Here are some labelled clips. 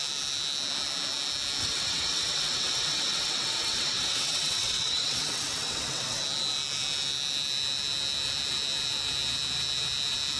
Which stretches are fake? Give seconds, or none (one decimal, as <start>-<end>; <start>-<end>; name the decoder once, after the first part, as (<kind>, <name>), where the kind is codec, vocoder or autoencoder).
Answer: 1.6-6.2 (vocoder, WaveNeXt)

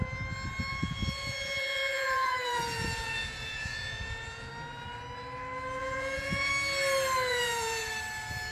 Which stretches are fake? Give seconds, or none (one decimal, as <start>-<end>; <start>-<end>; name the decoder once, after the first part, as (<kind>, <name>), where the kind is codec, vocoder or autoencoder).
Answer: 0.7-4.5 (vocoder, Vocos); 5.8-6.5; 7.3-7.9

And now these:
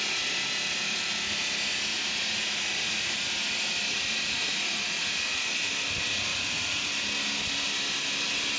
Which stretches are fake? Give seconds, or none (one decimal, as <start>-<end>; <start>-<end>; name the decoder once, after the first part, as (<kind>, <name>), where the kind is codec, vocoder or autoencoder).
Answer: 1.9-3.0 (vocoder, Vocos); 3.9-5.7; 6.3-6.9

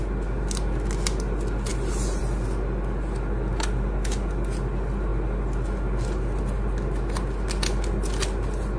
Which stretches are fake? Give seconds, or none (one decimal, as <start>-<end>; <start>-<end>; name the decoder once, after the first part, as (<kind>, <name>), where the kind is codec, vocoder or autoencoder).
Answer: none

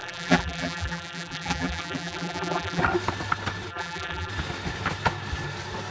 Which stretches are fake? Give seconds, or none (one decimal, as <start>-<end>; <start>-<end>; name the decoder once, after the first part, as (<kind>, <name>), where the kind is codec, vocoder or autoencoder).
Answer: 0.0-2.8 (vocoder, BigVGAN v2); 3.7-4.3